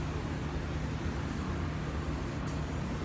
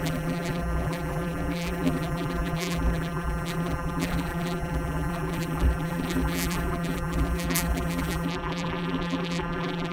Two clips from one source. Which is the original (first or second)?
first